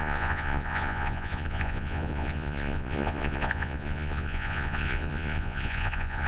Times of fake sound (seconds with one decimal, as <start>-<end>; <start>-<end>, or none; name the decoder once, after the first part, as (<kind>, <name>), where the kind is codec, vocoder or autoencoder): 0.0-6.3 (vocoder, Vocos)